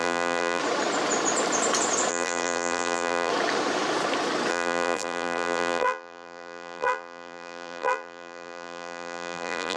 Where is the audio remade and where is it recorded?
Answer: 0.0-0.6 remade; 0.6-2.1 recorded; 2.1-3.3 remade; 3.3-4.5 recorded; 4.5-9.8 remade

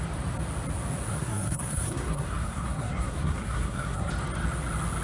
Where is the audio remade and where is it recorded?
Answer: 0.0-1.1 recorded; 1.1-4.1 remade; 4.1-5.0 recorded

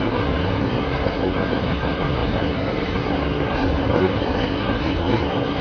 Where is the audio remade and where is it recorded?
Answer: 0.0-5.6 remade